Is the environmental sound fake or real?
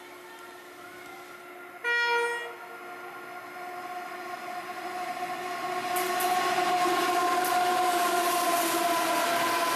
real